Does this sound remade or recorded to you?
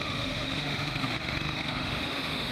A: remade